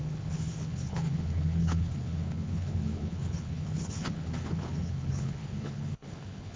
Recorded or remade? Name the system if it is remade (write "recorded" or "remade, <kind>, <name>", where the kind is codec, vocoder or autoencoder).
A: remade, codec, HILCodec